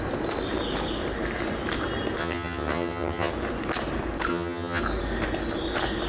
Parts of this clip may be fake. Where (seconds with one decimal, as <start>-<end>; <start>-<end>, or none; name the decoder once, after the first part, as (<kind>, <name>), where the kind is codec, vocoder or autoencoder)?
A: 2.2-3.3 (vocoder, HiFi-GAN); 4.3-4.8